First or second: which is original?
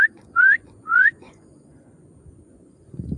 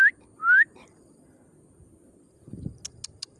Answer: second